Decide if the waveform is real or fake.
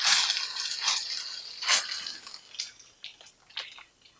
real